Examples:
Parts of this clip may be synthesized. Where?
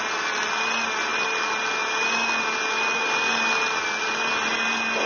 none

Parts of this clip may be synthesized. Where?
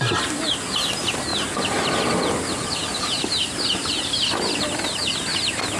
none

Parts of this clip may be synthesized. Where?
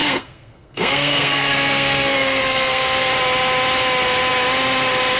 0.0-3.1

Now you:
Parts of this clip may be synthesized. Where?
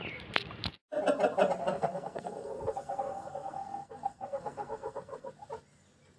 1.6-5.3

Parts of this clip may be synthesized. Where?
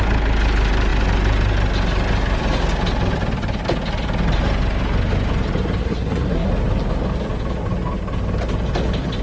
5.8-6.5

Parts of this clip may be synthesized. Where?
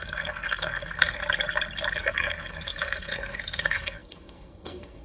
0.0-1.2; 1.9-5.0